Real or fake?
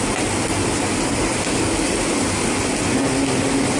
real